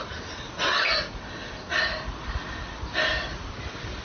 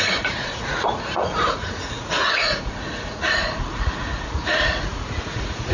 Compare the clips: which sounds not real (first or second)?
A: second